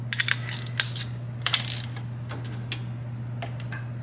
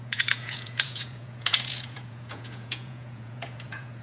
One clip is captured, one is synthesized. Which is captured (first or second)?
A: first